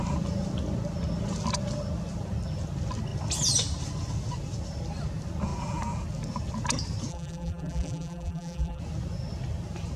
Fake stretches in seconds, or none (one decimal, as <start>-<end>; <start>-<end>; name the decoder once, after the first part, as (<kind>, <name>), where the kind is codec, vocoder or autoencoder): 7.1-8.8 (vocoder, BigVGAN v2)